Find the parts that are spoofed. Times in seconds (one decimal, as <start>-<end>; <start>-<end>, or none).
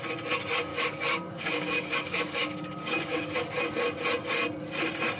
0.7-3.8